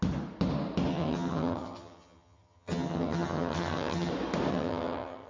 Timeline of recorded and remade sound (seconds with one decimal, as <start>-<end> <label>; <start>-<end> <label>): 0.0-0.9 recorded; 0.9-4.1 remade; 4.1-4.5 recorded; 4.5-5.3 remade

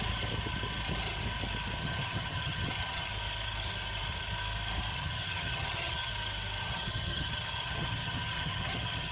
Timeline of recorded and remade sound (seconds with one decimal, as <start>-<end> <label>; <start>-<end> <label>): 0.0-1.8 recorded; 1.8-3.1 remade; 3.1-4.9 recorded; 4.9-6.1 remade; 6.1-6.6 recorded; 6.6-9.1 remade

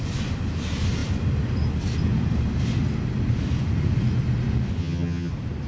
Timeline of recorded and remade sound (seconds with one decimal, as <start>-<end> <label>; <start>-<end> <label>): 0.0-4.8 recorded; 4.8-5.3 remade; 5.3-5.7 recorded

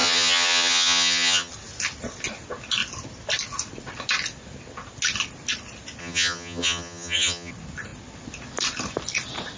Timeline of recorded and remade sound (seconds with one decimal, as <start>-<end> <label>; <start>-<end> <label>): 0.0-1.5 remade; 1.5-6.0 recorded; 6.0-7.5 remade; 7.5-9.6 recorded

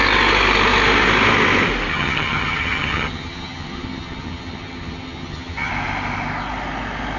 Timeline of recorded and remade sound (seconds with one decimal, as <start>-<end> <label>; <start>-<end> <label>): 0.0-1.9 recorded; 1.9-5.7 remade; 5.7-7.2 recorded

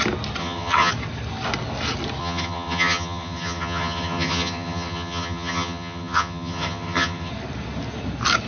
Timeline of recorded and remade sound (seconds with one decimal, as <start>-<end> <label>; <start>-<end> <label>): 0.0-0.4 recorded; 0.4-0.9 remade; 0.9-2.2 recorded; 2.2-7.3 remade; 7.3-8.5 recorded